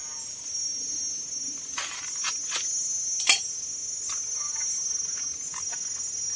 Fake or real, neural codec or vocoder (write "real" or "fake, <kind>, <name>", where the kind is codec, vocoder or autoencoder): real